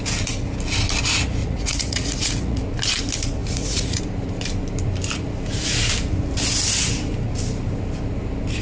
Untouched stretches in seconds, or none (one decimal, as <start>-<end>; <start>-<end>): 0.0-1.4; 2.6-3.4; 4.0-8.6